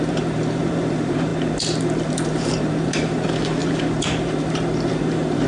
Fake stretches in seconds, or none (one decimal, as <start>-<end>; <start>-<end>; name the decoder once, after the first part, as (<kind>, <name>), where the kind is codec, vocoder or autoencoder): 0.0-1.3 (vocoder, BigVGAN v2); 1.8-5.5